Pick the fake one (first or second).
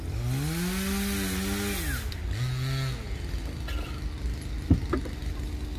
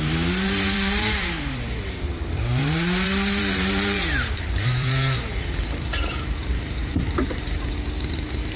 second